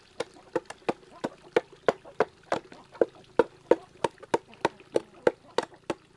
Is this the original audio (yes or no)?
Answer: yes